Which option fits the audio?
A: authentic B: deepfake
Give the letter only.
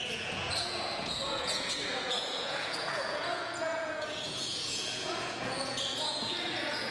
B